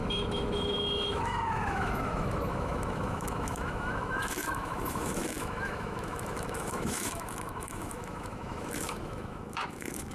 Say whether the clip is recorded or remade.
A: remade